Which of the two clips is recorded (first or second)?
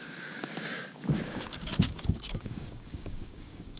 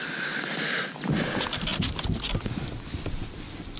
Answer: second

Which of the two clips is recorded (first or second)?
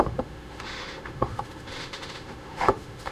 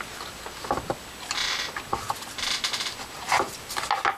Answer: second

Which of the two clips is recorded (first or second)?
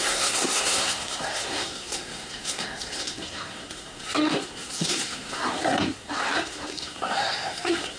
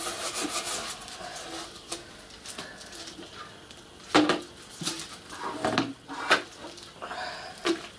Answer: second